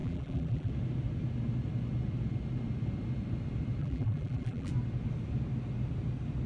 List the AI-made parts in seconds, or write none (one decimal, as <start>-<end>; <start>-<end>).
0.0-0.7; 3.8-4.7